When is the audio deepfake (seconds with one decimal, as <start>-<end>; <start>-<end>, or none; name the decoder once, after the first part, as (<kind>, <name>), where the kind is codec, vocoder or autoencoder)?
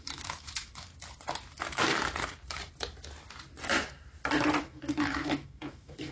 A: 0.0-0.9 (autoencoder, DAC-VAE); 4.6-6.1